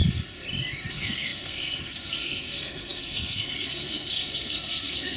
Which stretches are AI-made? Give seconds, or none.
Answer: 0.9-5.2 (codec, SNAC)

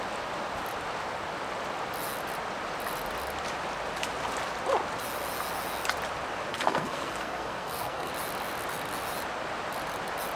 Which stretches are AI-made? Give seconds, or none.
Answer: 6.5-8.1 (codec, SNAC)

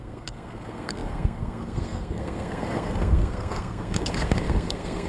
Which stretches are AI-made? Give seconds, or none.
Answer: 0.0-5.1 (codec, SNAC)

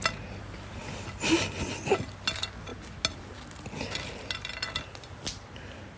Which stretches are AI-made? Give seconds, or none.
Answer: none